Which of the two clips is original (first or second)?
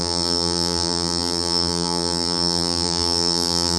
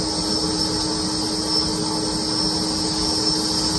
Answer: second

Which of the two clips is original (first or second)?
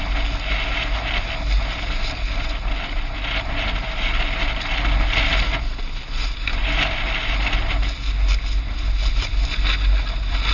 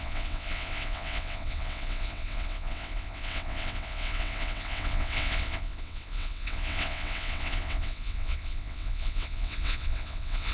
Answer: first